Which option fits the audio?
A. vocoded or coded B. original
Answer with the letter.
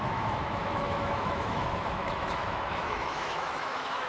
A